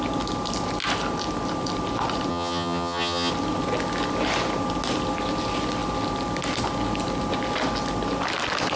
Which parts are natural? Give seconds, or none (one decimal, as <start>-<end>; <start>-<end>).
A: 0.0-2.3; 3.3-8.8